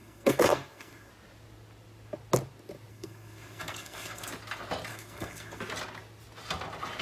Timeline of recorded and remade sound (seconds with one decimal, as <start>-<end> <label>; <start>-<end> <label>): 0.0-1.1 remade; 1.1-2.9 recorded; 2.9-4.3 remade; 4.3-4.9 recorded; 4.9-5.6 remade; 5.6-7.0 recorded